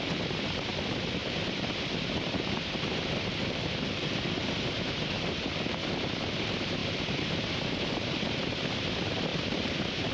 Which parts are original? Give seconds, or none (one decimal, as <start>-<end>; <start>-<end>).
none